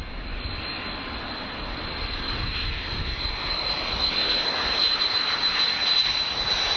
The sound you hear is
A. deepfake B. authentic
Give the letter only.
B